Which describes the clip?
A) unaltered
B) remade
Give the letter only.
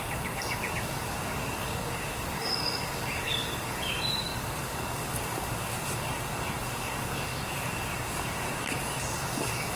B